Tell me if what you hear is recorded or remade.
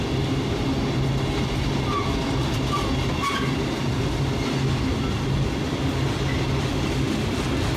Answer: recorded